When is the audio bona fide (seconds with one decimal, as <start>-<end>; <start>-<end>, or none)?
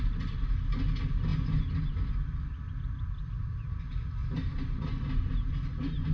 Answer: 0.0-4.2; 5.2-6.1